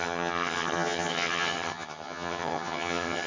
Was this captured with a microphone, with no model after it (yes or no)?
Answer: no